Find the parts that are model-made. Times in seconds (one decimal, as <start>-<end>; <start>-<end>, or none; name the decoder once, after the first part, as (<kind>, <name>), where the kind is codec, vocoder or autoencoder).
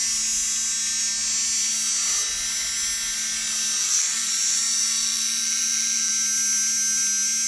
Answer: 3.8-6.1 (vocoder, BigVGAN v2)